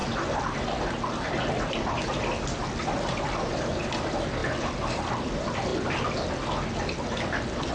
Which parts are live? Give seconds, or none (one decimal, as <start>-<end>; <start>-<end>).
0.0-0.8; 4.4-5.1; 5.7-7.7

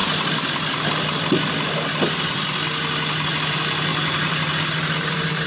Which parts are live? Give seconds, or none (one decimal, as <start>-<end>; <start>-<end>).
0.0-5.5

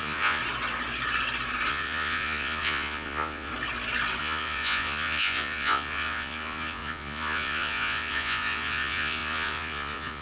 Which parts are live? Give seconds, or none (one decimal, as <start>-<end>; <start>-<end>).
0.4-1.7; 3.5-4.2

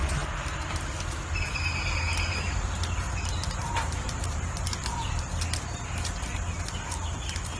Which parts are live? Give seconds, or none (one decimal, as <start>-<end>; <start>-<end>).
0.0-3.6; 5.2-7.6